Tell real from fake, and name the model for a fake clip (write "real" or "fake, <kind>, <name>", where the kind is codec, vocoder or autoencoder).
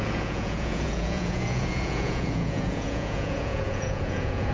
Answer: fake, vocoder, Vocos